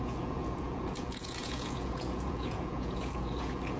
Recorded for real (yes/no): no